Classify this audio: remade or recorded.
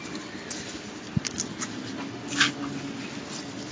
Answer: recorded